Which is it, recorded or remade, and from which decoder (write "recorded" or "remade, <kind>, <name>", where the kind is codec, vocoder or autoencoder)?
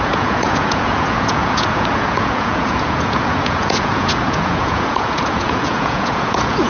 remade, vocoder, Vocos